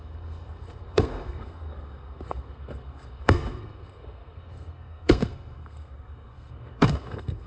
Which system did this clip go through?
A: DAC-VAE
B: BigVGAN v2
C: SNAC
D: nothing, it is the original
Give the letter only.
C